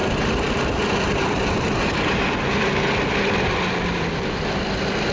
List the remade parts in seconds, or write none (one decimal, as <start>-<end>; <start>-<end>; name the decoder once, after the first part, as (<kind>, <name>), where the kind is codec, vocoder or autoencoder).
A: none